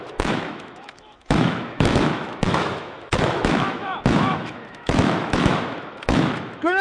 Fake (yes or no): yes